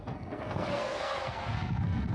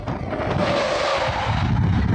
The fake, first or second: first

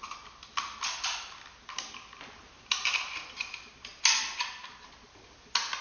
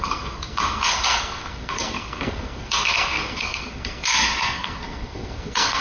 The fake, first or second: second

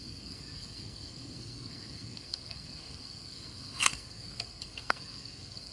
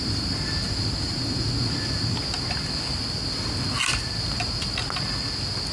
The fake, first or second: first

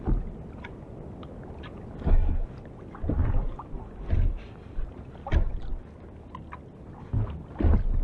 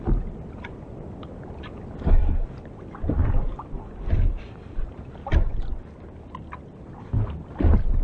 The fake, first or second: second